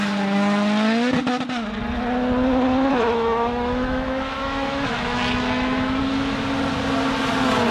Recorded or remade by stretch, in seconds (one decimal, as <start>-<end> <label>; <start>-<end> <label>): 0.0-2.9 recorded; 2.9-6.0 remade; 6.0-7.7 recorded